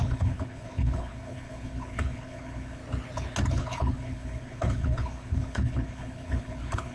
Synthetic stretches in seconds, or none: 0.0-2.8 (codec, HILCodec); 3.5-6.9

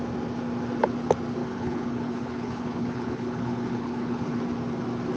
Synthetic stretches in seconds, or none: 1.4-4.4 (codec, HILCodec)

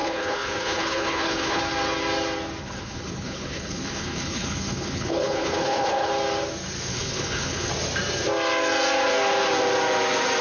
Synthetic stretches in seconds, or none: 0.0-1.6 (codec, HILCodec); 2.6-6.1; 6.9-7.7

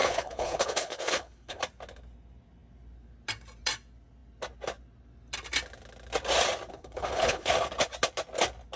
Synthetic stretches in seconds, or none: 0.0-1.6 (codec, HILCodec); 6.7-7.5

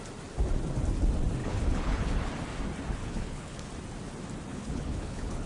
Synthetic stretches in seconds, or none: 1.4-2.3 (codec, HILCodec); 3.0-3.7; 4.5-5.5